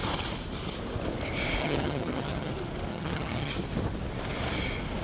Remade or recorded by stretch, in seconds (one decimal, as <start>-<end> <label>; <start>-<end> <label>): 0.0-1.6 recorded; 1.6-2.5 remade; 2.5-2.9 recorded; 2.9-3.5 remade; 3.5-5.0 recorded